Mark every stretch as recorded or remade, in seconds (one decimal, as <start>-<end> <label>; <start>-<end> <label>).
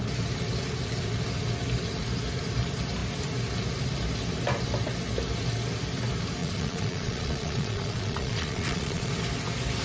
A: 0.0-6.4 recorded; 6.4-9.1 remade; 9.1-9.8 recorded